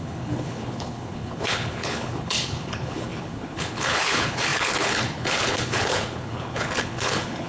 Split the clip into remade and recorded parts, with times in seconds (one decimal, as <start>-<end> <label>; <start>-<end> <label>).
0.0-7.5 remade